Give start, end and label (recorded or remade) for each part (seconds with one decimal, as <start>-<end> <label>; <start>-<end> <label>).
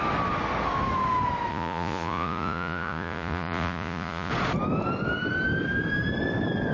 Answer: 0.0-1.5 recorded; 1.5-4.3 remade; 4.3-6.7 recorded